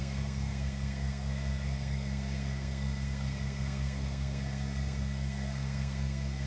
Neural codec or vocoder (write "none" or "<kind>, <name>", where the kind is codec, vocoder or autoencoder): codec, SNAC